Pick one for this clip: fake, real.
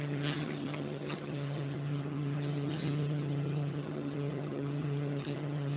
fake